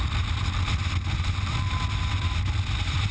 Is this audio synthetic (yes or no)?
no